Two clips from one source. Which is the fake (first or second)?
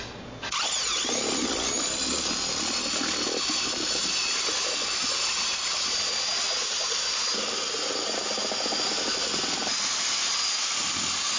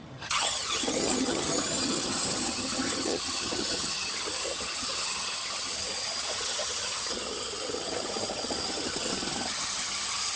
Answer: second